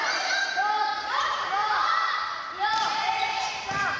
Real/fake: fake